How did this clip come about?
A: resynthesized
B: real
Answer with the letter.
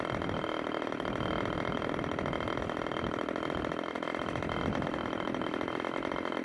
B